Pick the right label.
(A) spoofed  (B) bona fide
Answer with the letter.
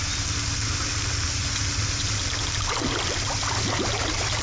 B